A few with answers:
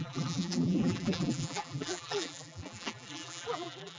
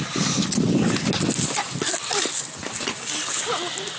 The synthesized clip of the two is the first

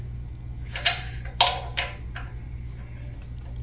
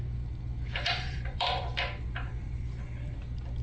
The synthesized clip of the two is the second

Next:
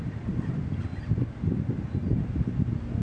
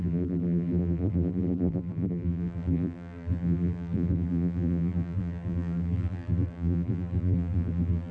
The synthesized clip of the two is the second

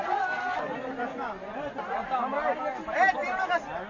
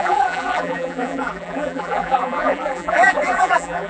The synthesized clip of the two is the second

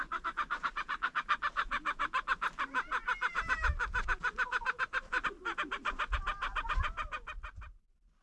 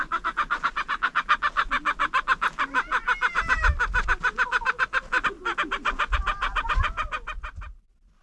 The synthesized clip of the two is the first